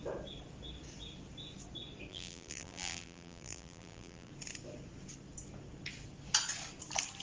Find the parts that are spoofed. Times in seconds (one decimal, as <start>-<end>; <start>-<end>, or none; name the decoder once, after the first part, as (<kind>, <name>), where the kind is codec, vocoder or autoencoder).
2.1-4.3 (vocoder, BigVGAN v2)